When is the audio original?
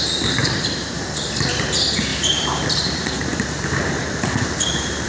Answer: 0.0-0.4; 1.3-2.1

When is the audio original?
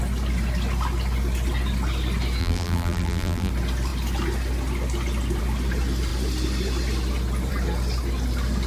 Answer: 0.0-2.4; 3.5-8.7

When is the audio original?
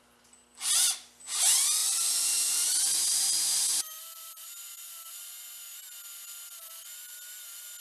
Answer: 0.0-1.8; 5.3-7.8